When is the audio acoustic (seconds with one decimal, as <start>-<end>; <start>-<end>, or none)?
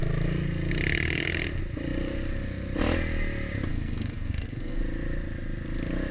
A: 0.0-3.7; 4.8-6.1